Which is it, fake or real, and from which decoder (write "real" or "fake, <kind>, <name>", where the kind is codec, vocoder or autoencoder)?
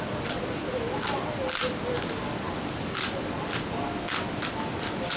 real